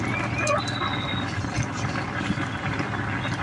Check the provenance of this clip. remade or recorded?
recorded